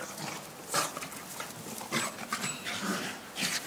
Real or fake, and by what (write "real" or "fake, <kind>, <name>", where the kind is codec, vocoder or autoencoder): real